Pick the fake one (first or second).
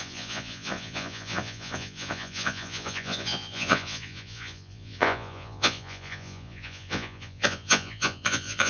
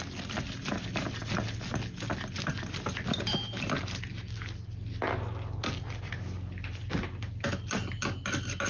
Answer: first